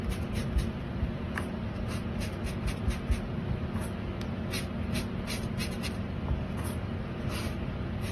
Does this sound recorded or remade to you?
recorded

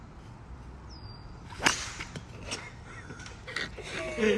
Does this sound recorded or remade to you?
recorded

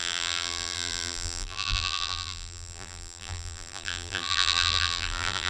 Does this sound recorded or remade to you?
remade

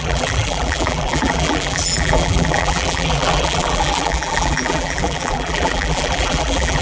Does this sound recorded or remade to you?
remade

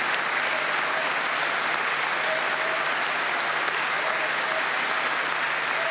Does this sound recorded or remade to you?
recorded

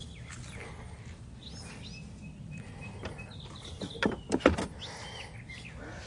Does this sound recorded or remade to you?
recorded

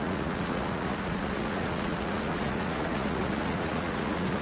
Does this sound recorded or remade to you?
remade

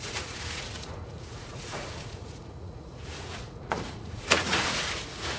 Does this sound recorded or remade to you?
remade